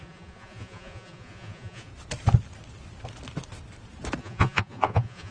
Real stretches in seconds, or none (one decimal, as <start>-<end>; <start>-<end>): 1.9-4.2